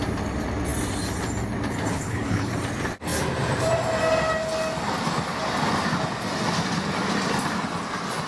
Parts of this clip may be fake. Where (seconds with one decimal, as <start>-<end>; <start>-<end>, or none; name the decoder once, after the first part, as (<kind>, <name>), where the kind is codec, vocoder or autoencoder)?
1.9-2.5 (codec, HILCodec)